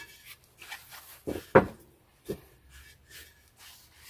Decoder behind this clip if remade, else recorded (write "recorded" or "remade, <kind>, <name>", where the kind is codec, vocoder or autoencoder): recorded